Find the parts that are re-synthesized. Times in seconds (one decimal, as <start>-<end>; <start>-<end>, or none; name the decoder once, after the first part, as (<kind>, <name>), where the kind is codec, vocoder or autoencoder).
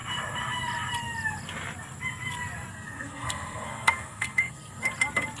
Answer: 2.7-4.9 (codec, SNAC)